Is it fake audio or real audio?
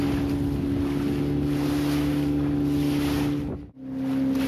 real